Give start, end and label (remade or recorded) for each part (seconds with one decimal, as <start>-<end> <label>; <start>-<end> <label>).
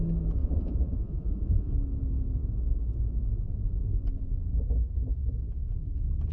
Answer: 0.0-0.4 recorded; 0.4-1.7 remade; 1.7-6.3 recorded